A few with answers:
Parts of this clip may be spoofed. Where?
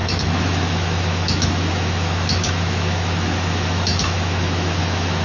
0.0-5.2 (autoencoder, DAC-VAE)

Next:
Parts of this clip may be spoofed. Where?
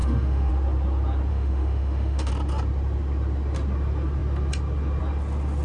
0.0-0.5 (autoencoder, DAC-VAE); 1.3-2.3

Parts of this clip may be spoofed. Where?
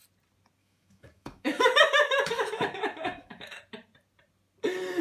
0.6-3.6 (autoencoder, DAC-VAE)